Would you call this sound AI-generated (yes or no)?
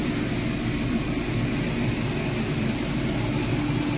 no